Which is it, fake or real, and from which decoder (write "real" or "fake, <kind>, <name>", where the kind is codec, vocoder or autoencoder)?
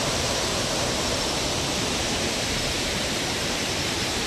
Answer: fake, vocoder, BigVGAN v2